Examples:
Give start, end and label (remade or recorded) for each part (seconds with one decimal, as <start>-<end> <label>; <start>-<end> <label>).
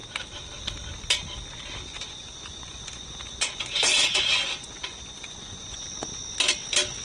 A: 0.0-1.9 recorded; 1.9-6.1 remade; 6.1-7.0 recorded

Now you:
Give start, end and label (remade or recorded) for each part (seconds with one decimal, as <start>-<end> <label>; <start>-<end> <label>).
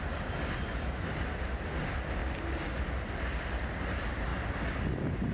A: 0.0-2.2 remade; 2.2-3.0 recorded; 3.0-4.3 remade; 4.3-5.3 recorded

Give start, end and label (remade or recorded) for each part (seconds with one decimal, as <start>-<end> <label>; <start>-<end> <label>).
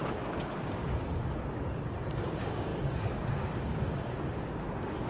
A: 0.0-1.2 remade; 1.2-2.2 recorded; 2.2-5.1 remade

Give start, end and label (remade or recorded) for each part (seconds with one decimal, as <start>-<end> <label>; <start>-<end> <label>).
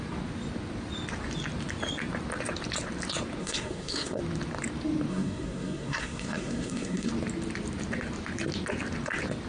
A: 0.0-3.4 recorded; 3.4-4.2 remade; 4.2-5.1 recorded; 5.1-7.1 remade; 7.1-9.5 recorded